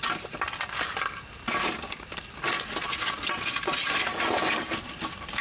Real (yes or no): yes